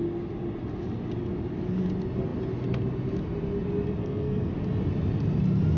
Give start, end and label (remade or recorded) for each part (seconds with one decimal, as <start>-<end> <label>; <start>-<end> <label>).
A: 0.0-4.0 recorded; 4.0-4.5 remade; 4.5-5.8 recorded